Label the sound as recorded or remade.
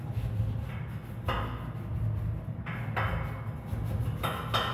recorded